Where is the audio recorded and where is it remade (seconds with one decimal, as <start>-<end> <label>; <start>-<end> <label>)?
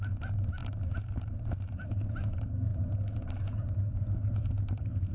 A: 0.0-5.1 recorded